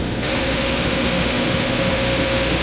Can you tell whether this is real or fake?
fake